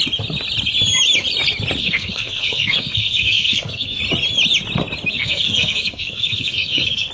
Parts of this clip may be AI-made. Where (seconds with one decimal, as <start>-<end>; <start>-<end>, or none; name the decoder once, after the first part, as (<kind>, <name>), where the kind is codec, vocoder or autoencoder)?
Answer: 1.8-4.0 (codec, SNAC); 5.1-7.1